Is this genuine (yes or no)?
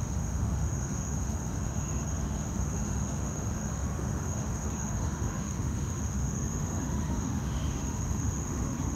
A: no